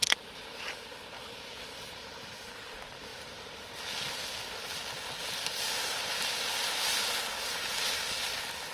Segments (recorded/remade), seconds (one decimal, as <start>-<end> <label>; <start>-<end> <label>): 0.0-3.1 remade; 3.1-8.0 recorded; 8.0-8.7 remade